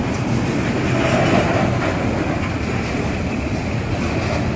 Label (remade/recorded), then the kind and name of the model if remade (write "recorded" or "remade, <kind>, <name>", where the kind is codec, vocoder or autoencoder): recorded